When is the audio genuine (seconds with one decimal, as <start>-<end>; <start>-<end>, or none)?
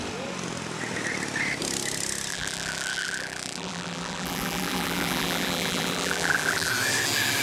0.0-2.3; 6.7-7.4